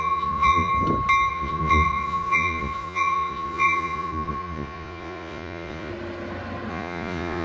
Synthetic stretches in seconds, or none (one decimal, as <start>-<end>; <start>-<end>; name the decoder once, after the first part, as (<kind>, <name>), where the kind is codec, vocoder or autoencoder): 0.0-0.7 (vocoder, Vocos); 1.3-5.9; 6.7-7.4